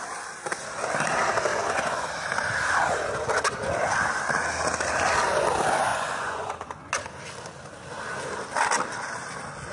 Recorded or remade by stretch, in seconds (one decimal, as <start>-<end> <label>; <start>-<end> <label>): 0.0-1.5 recorded; 1.5-2.1 remade; 2.1-5.9 recorded; 5.9-6.9 remade; 6.9-9.7 recorded